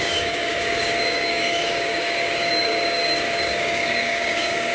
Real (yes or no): no